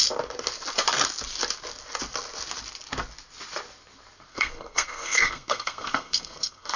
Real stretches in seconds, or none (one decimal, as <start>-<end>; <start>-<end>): 0.0-4.3

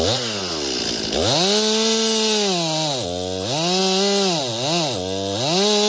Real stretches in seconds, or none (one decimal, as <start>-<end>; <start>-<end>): 0.0-5.9